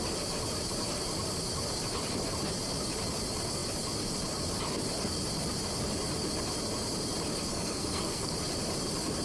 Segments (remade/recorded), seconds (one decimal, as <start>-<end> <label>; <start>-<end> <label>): 0.0-7.5 recorded; 7.5-8.3 remade; 8.3-9.2 recorded